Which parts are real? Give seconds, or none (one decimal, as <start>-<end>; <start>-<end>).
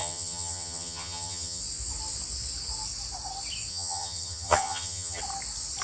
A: 1.6-3.7; 5.2-5.8